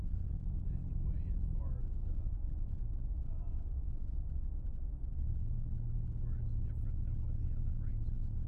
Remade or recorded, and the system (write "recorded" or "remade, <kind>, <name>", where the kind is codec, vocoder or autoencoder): recorded